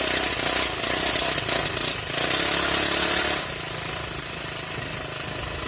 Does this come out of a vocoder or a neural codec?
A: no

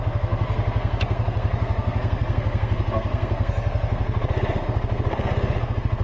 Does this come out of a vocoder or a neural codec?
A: yes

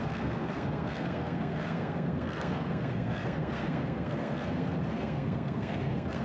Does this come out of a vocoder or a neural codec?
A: yes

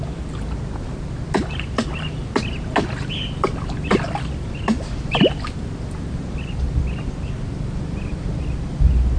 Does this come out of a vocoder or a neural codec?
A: no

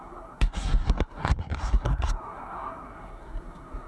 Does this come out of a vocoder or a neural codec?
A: yes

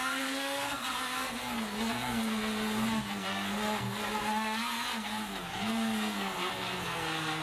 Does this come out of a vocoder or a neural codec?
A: yes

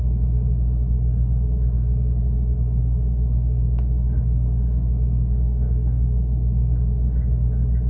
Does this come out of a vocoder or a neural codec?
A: no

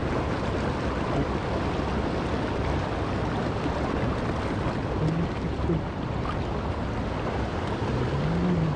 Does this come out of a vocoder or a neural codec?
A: no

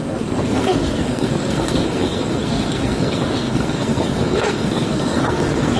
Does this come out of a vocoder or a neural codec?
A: yes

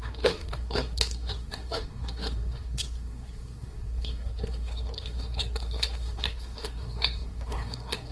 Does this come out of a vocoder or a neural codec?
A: yes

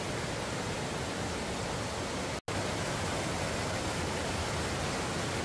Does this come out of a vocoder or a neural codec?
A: no